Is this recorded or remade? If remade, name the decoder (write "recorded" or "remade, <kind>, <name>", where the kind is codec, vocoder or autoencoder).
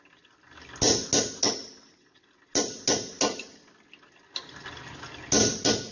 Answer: recorded